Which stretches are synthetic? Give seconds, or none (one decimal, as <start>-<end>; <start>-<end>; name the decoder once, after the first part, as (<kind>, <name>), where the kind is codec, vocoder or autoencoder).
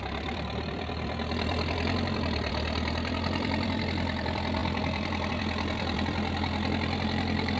0.0-7.6 (vocoder, BigVGAN v2)